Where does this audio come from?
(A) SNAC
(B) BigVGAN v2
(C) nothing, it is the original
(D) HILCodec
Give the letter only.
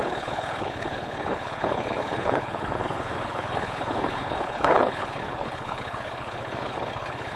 D